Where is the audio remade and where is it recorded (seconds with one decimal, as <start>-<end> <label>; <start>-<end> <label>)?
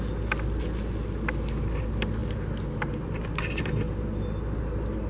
0.0-5.1 recorded